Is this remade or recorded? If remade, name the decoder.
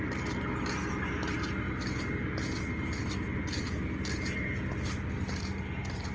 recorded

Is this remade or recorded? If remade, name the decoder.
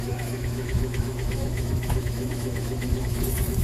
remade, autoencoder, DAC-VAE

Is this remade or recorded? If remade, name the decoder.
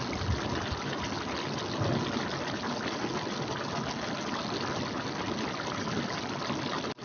recorded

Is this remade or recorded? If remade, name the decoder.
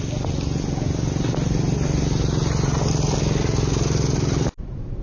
recorded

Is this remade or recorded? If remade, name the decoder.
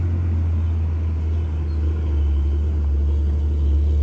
recorded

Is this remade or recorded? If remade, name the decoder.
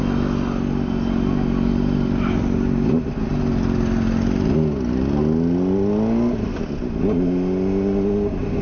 recorded